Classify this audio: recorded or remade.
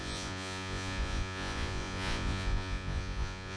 remade